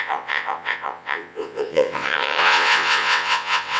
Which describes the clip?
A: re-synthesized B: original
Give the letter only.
A